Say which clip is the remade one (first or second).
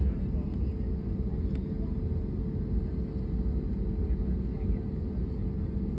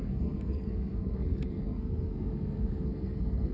second